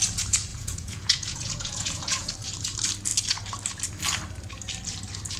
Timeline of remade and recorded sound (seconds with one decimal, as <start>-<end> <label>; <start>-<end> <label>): 0.0-0.5 recorded; 0.5-2.3 remade; 2.3-5.4 recorded